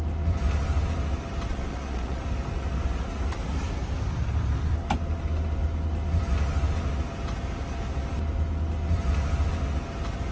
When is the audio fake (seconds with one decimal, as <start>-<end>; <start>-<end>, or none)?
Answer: 1.5-2.2